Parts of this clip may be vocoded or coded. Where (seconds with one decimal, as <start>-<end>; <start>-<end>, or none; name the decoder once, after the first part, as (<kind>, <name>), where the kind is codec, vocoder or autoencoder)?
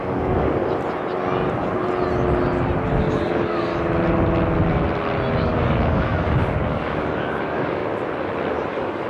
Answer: 0.0-0.6 (codec, DAC); 3.0-3.7; 5.4-7.8; 8.7-9.1